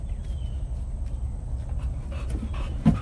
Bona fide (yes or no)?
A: yes